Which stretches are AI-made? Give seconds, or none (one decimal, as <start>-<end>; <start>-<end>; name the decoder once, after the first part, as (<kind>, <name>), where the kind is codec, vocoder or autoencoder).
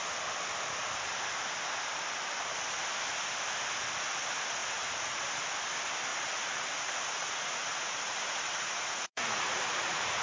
4.6-5.3 (vocoder, Vocos); 6.1-10.2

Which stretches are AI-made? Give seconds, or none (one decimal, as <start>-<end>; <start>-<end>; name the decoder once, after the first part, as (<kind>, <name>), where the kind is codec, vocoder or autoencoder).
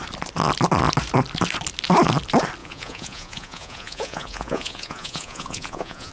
2.6-6.1 (vocoder, Vocos)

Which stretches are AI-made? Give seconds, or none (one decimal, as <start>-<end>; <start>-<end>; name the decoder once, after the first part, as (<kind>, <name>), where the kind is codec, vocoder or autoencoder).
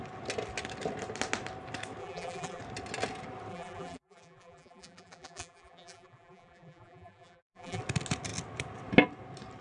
2.0-2.6 (vocoder, BigVGAN v2); 3.5-7.8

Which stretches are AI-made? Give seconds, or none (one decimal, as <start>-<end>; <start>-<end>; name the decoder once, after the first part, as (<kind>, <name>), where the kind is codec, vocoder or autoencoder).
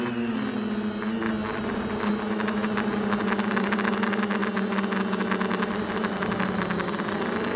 none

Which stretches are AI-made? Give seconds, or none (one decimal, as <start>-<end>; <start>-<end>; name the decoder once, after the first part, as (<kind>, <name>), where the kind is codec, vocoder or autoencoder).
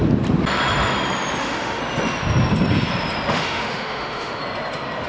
1.4-1.8 (autoencoder, DAC-VAE); 3.3-4.4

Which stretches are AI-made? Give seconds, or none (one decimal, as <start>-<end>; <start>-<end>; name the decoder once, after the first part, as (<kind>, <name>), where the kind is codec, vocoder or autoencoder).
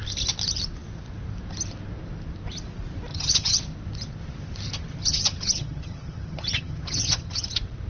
3.1-3.6 (vocoder, HiFi-GAN); 5.0-7.5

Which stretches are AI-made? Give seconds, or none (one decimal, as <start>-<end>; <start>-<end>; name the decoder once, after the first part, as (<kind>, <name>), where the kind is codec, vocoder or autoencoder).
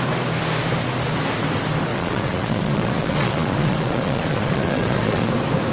1.9-5.3 (vocoder, Vocos)